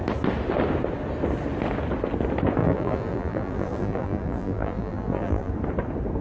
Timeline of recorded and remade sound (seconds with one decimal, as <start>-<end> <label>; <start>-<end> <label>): 0.0-2.6 recorded; 2.6-5.5 remade; 5.5-6.2 recorded